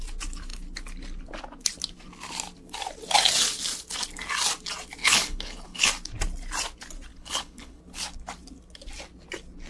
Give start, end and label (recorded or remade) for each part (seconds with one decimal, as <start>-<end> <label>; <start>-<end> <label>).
0.0-5.0 recorded; 5.0-5.9 remade; 5.9-7.1 recorded; 7.1-7.8 remade; 7.8-9.7 recorded

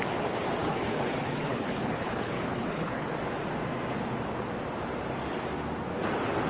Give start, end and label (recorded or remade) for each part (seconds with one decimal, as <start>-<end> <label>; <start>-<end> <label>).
0.0-0.6 recorded; 0.6-3.1 remade; 3.1-6.5 recorded

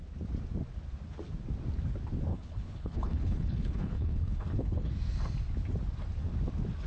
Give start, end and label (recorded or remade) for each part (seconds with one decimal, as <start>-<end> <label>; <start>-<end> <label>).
0.0-2.3 recorded; 2.3-4.9 remade; 4.9-6.9 recorded

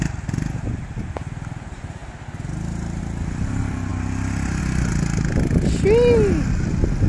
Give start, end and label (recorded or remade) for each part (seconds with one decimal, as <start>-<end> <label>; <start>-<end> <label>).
0.0-7.1 recorded

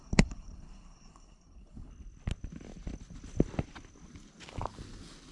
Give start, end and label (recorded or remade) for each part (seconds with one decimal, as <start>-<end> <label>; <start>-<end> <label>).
0.0-1.9 remade; 1.9-5.3 recorded